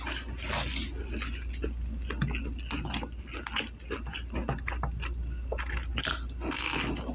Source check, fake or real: real